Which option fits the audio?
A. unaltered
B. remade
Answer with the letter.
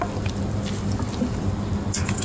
A